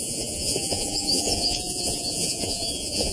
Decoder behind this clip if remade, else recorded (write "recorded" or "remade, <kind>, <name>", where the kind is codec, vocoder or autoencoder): remade, vocoder, Vocos